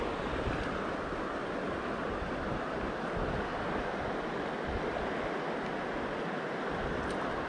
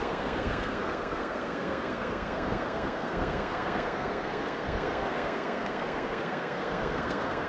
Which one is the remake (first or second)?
second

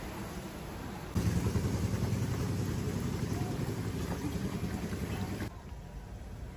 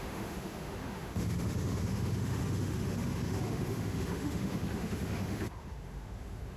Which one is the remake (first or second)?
second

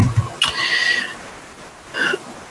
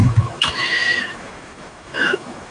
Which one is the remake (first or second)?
second